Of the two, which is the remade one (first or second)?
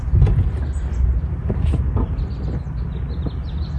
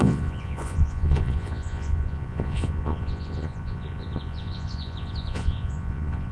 second